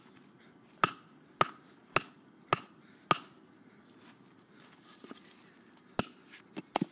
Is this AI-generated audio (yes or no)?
no